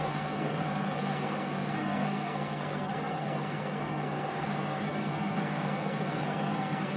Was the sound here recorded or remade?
remade